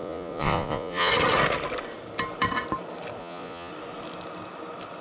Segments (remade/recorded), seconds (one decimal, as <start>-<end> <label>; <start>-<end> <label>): 0.0-1.1 remade; 1.1-3.2 recorded; 3.2-3.7 remade; 3.7-5.0 recorded